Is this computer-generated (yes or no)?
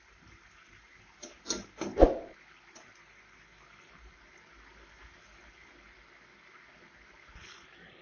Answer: no